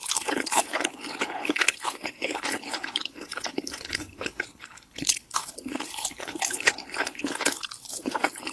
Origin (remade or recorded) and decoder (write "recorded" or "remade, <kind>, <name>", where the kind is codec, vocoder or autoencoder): remade, codec, HILCodec